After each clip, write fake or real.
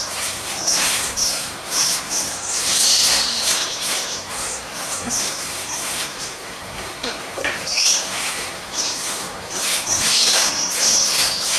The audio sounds fake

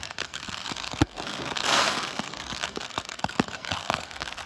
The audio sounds fake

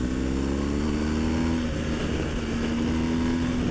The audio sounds real